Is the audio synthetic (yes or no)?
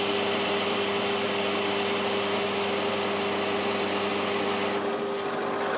no